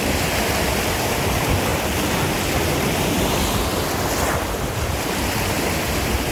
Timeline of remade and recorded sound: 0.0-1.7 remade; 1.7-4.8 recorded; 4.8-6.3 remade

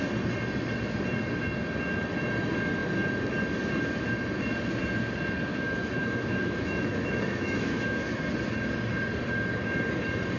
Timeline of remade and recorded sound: 0.0-5.5 recorded; 5.5-8.3 remade; 8.3-10.4 recorded